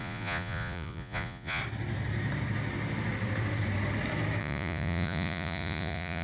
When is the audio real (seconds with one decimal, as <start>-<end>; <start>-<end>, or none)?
1.6-4.4